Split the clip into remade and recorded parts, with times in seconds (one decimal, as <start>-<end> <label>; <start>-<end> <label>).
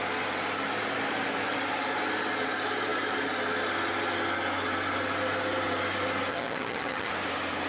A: 0.0-6.3 recorded; 6.3-7.1 remade; 7.1-7.7 recorded